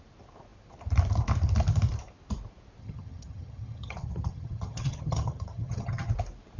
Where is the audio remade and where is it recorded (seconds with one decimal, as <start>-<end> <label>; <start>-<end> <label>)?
0.0-2.8 recorded; 2.8-6.1 remade; 6.1-6.6 recorded